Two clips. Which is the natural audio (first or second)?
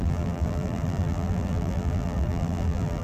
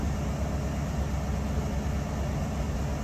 second